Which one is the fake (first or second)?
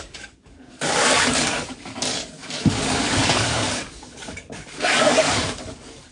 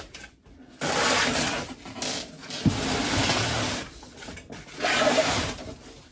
first